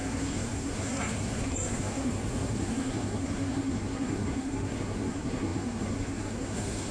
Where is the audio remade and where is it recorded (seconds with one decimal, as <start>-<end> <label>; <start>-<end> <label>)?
0.0-6.9 remade